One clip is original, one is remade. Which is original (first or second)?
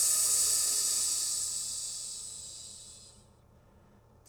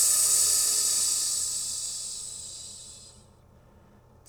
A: second